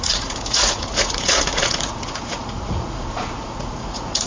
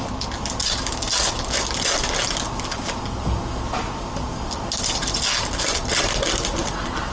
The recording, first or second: second